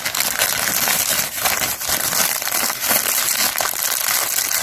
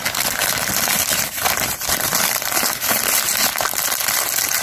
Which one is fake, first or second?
second